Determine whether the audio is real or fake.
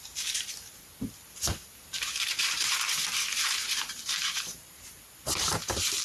fake